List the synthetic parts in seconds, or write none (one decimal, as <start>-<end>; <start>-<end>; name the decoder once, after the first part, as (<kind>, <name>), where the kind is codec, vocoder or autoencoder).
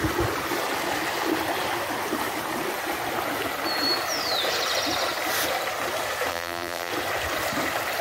6.3-6.9 (vocoder, BigVGAN v2)